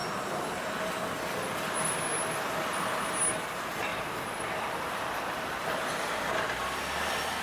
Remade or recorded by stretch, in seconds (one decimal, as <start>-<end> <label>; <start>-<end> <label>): 0.0-3.9 recorded; 3.9-6.2 remade; 6.2-7.4 recorded

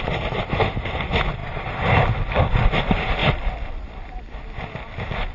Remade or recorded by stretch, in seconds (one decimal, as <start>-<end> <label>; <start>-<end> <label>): 0.0-5.3 recorded

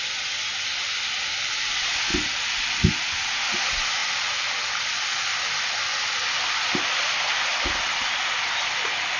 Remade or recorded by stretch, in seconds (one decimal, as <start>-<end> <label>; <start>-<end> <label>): 0.0-7.5 recorded; 7.5-8.1 remade; 8.1-9.2 recorded

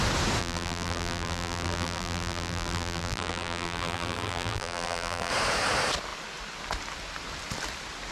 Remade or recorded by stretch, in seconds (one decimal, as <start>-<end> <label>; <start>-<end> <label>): 0.0-0.4 recorded; 0.4-5.3 remade; 5.3-8.1 recorded

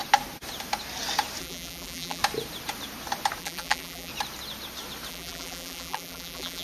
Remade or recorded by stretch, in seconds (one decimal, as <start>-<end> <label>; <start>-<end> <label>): 0.0-1.4 recorded; 1.4-2.2 remade; 2.2-3.4 recorded; 3.4-4.1 remade; 4.1-5.1 recorded; 5.1-6.6 remade

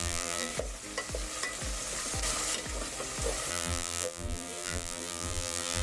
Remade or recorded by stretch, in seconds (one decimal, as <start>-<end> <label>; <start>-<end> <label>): 0.0-0.5 remade; 0.5-3.5 recorded; 3.5-5.8 remade

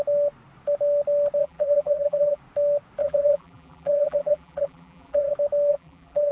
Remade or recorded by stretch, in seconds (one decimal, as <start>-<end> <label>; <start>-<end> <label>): 0.0-1.4 recorded; 1.4-2.4 remade; 2.4-3.0 recorded; 3.0-5.3 remade; 5.3-5.7 recorded; 5.7-6.3 remade

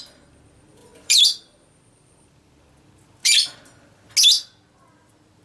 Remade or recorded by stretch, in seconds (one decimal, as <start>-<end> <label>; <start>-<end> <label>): 0.0-0.8 recorded; 0.8-2.7 remade; 2.7-3.2 recorded; 3.2-4.1 remade; 4.1-5.4 recorded